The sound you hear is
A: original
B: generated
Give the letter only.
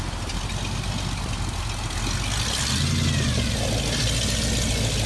A